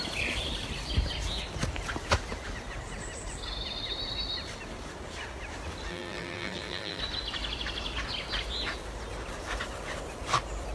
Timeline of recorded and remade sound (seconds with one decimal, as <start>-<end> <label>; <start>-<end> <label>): 0.0-5.9 recorded; 5.9-7.0 remade; 7.0-10.7 recorded